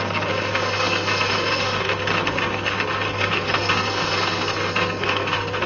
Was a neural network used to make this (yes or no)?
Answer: yes